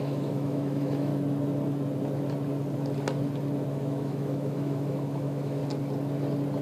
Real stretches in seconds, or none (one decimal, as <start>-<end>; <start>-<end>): 1.1-3.7; 5.6-6.6

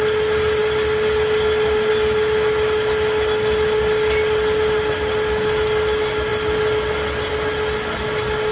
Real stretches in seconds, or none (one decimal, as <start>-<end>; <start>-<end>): 0.0-8.5

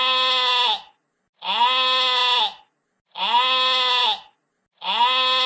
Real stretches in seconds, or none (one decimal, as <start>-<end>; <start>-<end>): 0.0-5.5

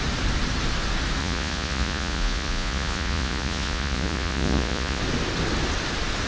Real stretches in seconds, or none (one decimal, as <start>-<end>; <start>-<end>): 0.0-1.2; 5.0-6.3

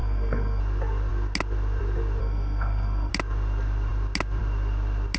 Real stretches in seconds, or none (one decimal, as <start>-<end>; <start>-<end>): 0.6-2.2; 3.1-5.2

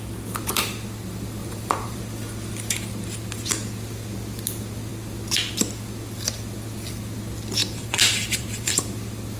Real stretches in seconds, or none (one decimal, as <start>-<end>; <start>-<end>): 0.0-1.4; 2.0-7.6; 8.8-9.4

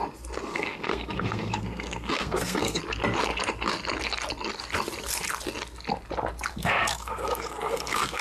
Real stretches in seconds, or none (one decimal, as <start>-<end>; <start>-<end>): 0.0-0.5; 2.8-6.5